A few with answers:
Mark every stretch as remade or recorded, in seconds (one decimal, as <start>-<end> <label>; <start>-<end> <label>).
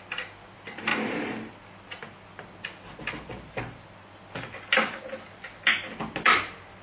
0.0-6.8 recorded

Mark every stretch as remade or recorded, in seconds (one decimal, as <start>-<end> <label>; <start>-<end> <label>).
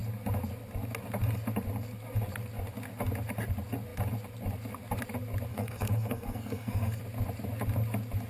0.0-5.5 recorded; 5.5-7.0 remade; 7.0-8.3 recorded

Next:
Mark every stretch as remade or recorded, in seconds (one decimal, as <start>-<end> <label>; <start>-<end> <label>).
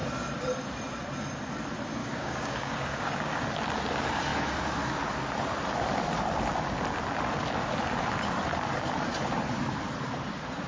0.0-2.0 recorded; 2.0-3.4 remade; 3.4-10.7 recorded